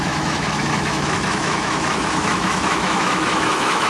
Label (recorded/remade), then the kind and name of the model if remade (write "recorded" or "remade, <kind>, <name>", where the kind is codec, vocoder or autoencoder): remade, autoencoder, DAC-VAE